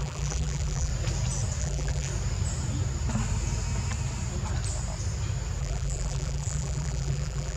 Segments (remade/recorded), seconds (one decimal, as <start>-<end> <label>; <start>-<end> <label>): 0.0-0.9 remade; 0.9-1.6 recorded; 1.6-2.1 remade; 2.1-5.6 recorded; 5.6-7.6 remade